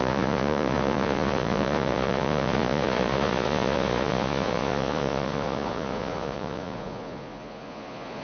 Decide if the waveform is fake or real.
fake